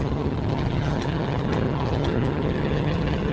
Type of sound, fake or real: fake